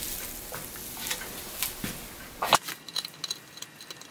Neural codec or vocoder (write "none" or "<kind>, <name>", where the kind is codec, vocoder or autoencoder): none